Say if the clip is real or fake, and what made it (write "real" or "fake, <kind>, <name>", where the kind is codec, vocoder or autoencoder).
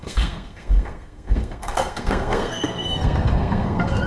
fake, codec, SNAC